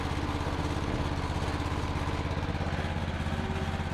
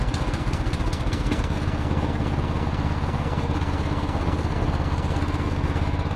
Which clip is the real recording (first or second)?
first